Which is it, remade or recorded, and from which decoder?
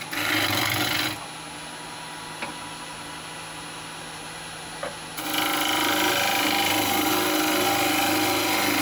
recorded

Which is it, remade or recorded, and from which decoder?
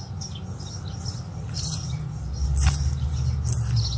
recorded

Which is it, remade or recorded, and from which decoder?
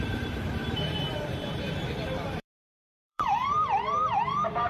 remade, vocoder, BigVGAN v2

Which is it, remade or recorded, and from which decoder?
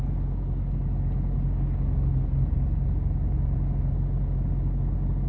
recorded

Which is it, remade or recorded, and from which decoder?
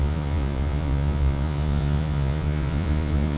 remade, vocoder, Vocos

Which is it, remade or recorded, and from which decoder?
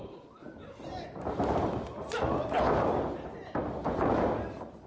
recorded